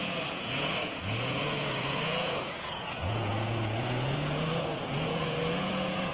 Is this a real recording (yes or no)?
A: no